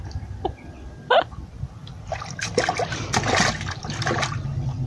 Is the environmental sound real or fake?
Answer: real